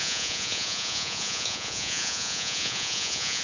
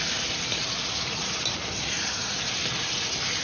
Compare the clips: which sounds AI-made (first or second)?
first